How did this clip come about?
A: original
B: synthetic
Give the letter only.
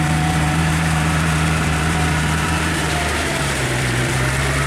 B